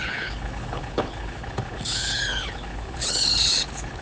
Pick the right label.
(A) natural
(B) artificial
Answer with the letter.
B